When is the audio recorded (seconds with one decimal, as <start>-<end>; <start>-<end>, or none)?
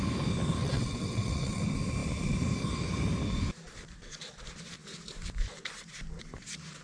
0.0-0.6; 1.6-6.8